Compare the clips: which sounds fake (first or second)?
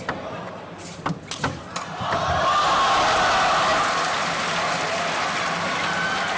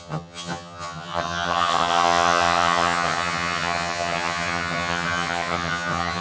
second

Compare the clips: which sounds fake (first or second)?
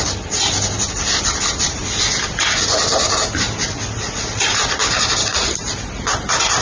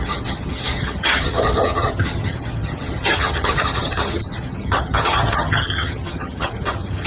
second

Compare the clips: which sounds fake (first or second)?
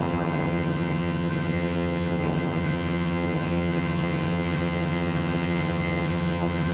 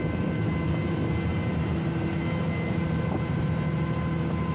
first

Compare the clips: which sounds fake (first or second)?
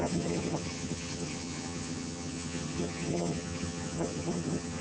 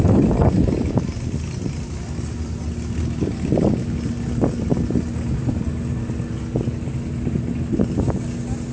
first